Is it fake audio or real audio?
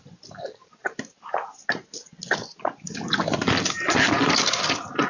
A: real